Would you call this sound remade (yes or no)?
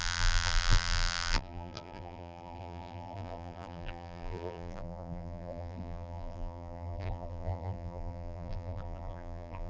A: yes